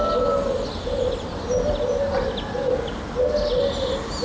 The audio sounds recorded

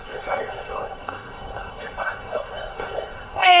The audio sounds remade